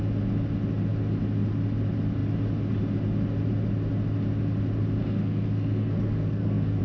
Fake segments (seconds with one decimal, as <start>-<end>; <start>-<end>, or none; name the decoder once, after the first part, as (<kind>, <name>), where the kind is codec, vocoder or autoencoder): 5.0-6.8 (codec, SNAC)